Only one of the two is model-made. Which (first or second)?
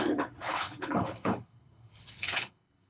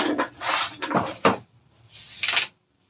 first